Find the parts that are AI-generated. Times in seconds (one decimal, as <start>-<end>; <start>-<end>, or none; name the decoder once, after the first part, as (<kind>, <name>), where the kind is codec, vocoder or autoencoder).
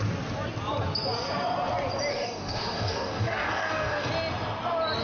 2.1-4.1 (codec, DAC)